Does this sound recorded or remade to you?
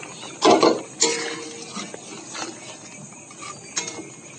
recorded